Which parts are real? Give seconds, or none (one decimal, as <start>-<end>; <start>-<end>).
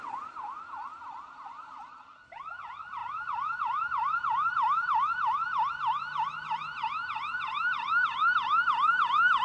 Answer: 0.0-9.4